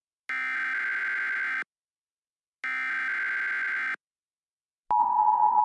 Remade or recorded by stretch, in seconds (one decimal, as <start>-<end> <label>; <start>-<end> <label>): 0.0-5.0 recorded; 5.0-5.6 remade